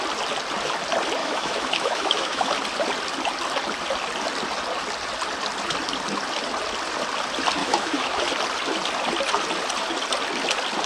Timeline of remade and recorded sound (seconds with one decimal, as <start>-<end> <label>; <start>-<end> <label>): 0.0-1.2 recorded; 1.2-2.5 remade; 2.5-7.6 recorded; 7.6-8.2 remade; 8.2-10.9 recorded